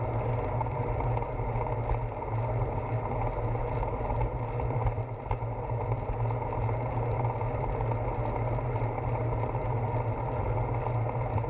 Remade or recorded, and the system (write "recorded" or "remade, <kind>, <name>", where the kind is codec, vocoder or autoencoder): recorded